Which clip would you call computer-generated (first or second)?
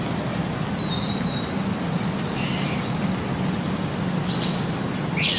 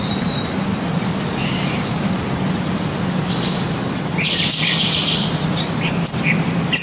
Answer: second